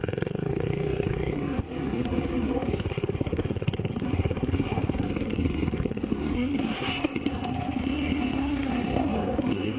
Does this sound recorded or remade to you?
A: remade